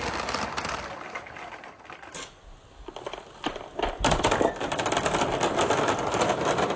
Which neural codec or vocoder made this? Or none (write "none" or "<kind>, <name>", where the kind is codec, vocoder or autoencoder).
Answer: none